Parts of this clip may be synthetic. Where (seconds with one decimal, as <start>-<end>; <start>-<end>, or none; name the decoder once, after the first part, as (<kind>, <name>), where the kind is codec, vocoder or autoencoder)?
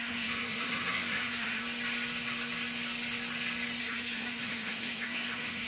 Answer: 0.0-1.6 (codec, SNAC); 3.8-5.7